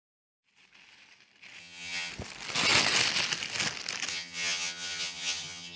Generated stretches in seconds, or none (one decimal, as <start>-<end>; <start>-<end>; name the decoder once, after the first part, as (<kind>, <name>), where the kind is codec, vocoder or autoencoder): 1.6-2.1 (vocoder, HiFi-GAN); 4.1-5.8